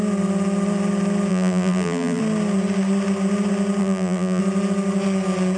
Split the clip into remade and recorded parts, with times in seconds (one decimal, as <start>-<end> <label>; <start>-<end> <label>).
0.0-1.3 recorded; 1.3-2.2 remade; 2.2-3.8 recorded; 3.8-4.4 remade; 4.4-5.6 recorded